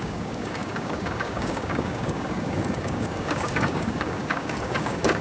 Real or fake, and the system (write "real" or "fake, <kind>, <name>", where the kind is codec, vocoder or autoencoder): fake, codec, DAC